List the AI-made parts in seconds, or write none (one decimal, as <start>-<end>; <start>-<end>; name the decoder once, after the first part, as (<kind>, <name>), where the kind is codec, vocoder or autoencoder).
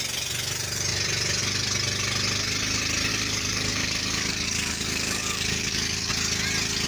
3.1-6.1 (codec, DAC)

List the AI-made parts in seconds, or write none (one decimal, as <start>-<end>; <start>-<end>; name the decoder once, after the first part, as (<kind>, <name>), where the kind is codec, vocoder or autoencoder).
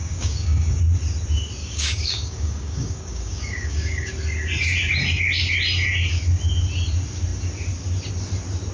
0.0-0.8 (codec, DAC); 1.6-4.1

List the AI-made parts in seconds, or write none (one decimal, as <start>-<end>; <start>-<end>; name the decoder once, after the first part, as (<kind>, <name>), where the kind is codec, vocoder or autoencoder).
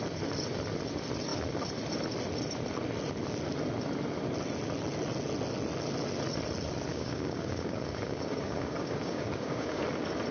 6.9-9.8 (codec, DAC)